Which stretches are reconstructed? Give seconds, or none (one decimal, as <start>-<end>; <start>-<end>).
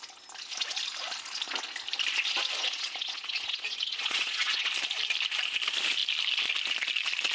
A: 2.6-4.7